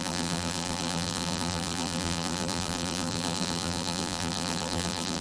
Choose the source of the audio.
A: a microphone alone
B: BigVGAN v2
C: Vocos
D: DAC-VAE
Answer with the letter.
B